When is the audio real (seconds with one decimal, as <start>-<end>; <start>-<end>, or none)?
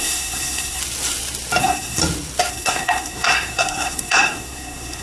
0.8-1.6; 2.0-2.5